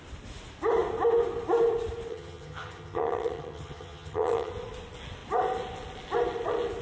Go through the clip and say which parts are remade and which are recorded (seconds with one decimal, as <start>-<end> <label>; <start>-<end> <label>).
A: 0.0-2.1 recorded; 2.1-4.5 remade; 4.5-6.8 recorded